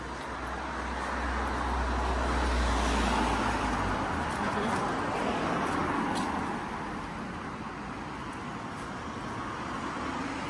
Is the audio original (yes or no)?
yes